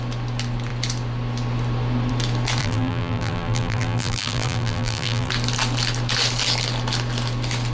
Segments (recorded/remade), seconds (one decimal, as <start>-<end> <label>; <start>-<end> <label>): 0.0-2.6 recorded; 2.6-5.3 remade; 5.3-7.7 recorded